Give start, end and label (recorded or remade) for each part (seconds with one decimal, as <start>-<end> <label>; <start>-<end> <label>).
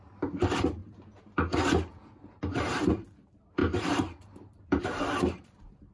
0.0-0.8 remade; 0.8-2.4 recorded; 2.4-5.9 remade